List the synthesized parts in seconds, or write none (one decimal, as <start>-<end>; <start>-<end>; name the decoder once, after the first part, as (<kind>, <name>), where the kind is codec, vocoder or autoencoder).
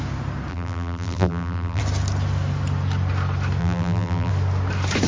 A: 0.5-1.8 (vocoder, BigVGAN v2); 3.6-4.3